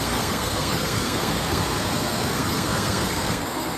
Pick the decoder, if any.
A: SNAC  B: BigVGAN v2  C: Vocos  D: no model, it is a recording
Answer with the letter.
A